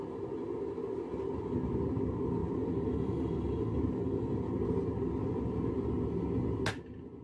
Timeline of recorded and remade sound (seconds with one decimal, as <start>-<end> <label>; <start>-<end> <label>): 0.0-7.2 recorded